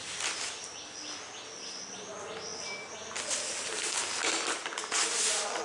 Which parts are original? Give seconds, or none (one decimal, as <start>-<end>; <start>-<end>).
0.0-5.6